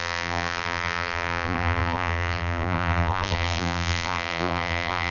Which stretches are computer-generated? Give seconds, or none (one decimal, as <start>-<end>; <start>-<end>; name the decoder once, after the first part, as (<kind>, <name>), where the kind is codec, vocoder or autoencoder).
0.0-5.1 (vocoder, BigVGAN v2)